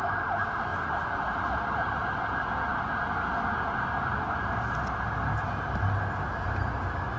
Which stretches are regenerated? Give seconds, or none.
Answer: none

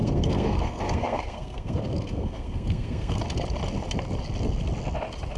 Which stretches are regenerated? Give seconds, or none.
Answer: 0.0-3.2 (codec, SNAC)

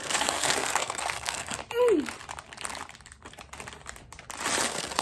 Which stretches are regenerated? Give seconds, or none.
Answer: 0.0-1.6 (codec, SNAC); 4.6-5.0

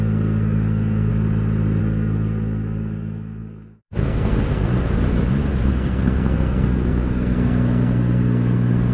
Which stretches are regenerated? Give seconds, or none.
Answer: 0.0-1.1 (codec, SNAC); 1.8-4.7; 5.7-8.9